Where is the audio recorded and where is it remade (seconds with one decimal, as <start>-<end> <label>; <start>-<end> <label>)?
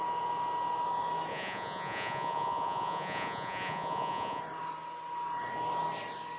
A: 0.0-1.3 recorded; 1.3-4.4 remade; 4.4-6.4 recorded